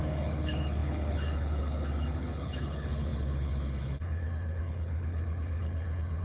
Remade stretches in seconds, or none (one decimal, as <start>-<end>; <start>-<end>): 0.0-6.2